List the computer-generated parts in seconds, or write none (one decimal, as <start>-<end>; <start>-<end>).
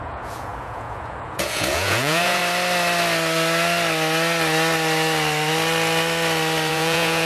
0.0-2.4; 6.7-7.2